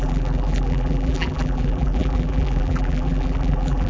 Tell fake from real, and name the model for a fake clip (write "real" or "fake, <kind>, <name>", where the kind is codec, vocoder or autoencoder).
fake, vocoder, BigVGAN v2